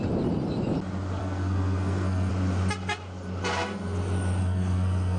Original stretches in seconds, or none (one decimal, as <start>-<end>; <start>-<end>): 0.0-1.2; 2.3-4.4